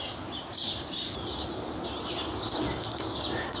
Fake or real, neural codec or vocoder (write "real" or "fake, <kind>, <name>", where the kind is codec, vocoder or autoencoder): real